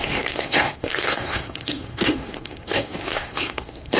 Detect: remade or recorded remade